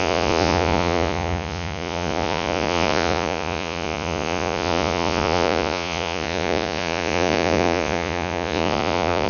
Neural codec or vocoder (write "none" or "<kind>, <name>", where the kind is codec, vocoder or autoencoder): vocoder, Vocos